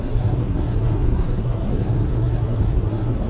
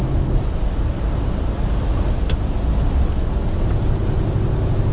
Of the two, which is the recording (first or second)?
second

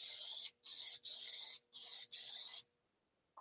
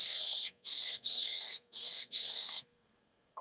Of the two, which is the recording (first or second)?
first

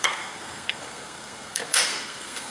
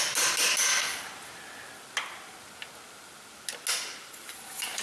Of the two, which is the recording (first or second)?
second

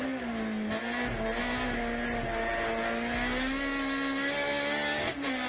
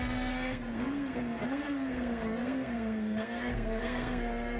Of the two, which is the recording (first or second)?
first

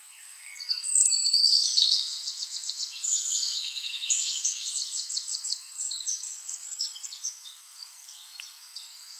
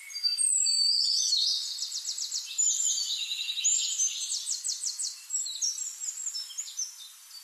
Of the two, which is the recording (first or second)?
second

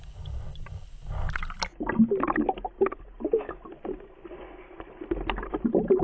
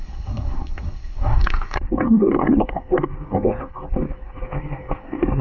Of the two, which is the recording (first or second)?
first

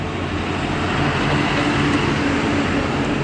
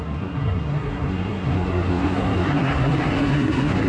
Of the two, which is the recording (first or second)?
first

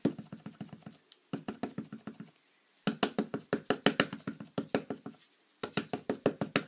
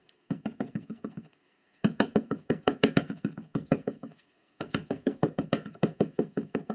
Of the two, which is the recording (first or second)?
first